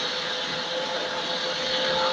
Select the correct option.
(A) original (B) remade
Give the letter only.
A